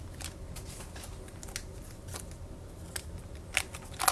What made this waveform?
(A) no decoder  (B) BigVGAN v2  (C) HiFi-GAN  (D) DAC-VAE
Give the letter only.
A